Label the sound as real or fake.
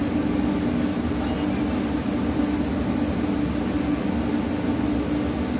real